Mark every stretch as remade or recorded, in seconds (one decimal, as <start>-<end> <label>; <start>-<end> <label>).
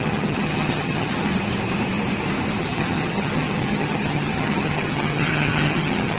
0.0-1.3 remade; 1.3-2.6 recorded; 2.6-6.2 remade